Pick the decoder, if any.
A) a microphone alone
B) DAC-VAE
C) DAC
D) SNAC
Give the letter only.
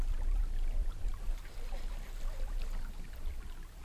A